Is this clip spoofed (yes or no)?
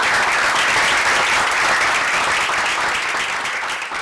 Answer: no